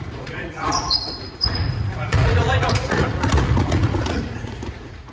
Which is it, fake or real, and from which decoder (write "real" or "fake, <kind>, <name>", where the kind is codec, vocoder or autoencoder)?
fake, vocoder, Vocos